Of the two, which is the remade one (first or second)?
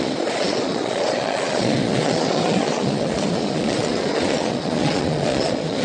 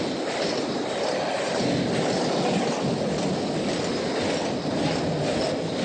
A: first